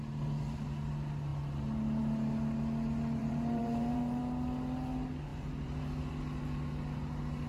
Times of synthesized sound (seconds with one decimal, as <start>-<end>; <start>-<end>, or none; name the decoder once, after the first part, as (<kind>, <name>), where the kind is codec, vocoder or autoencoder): 3.2-4.2 (vocoder, BigVGAN v2)